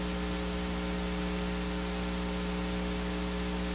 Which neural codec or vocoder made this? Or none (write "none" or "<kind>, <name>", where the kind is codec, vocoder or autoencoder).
none